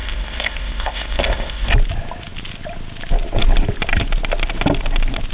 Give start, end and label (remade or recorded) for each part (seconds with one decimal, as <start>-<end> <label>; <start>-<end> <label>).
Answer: 0.0-1.7 remade; 1.7-5.3 recorded